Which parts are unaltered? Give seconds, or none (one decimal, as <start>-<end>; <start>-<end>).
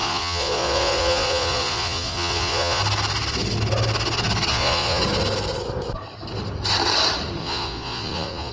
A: 2.8-4.5; 5.0-7.4